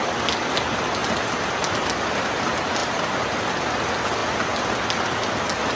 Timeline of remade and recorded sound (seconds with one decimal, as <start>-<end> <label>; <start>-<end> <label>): 0.0-5.8 recorded